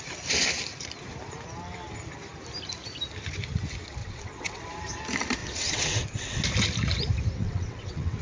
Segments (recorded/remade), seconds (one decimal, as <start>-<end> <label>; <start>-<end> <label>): 0.0-4.0 recorded; 4.0-4.7 remade; 4.7-5.4 recorded; 5.4-6.4 remade; 6.4-7.4 recorded; 7.4-8.2 remade